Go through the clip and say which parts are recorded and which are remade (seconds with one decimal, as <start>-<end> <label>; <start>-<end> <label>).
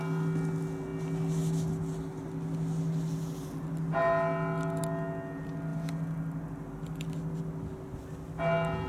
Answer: 0.0-8.9 recorded